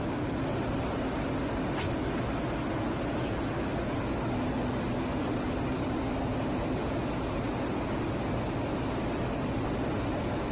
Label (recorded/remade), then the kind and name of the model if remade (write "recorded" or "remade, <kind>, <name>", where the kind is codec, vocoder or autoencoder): recorded